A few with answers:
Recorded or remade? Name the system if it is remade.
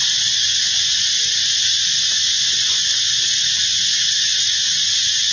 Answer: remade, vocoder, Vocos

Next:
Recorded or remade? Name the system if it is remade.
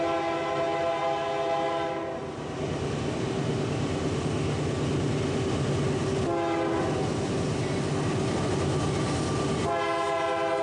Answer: recorded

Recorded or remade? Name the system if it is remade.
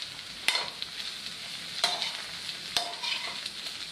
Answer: recorded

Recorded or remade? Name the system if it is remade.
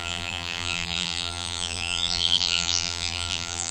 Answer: remade, vocoder, BigVGAN v2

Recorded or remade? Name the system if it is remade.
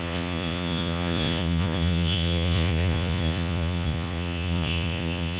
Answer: remade, vocoder, Vocos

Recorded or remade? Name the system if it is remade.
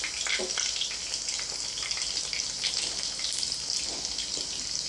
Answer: recorded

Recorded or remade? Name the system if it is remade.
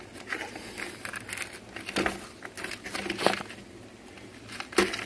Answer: recorded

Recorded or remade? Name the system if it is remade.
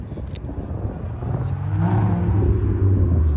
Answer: recorded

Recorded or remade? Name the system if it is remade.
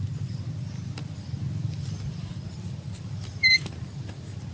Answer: recorded